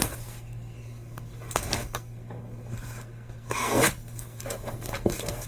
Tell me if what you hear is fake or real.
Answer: fake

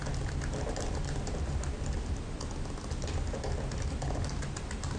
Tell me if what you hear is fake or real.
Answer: real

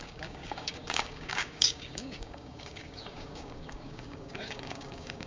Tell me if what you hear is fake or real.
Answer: fake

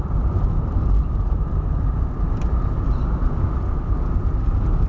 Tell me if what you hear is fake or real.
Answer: fake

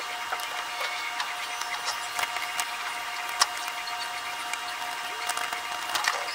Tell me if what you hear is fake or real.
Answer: real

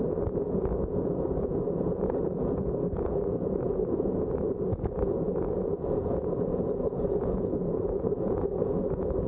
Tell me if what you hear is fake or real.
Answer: fake